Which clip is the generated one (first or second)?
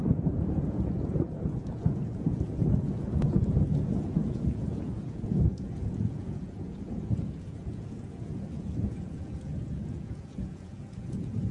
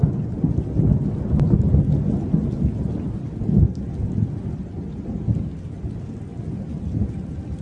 first